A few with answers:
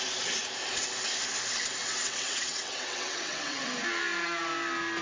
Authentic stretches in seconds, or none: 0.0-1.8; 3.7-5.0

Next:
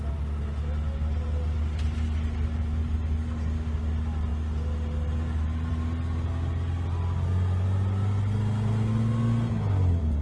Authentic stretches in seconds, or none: 0.0-10.2